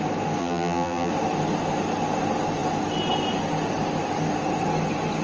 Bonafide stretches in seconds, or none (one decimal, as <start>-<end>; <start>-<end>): 0.0-0.4; 1.1-5.2